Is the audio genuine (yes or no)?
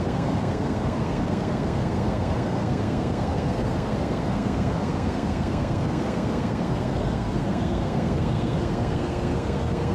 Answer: no